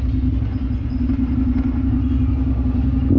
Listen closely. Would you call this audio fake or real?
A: real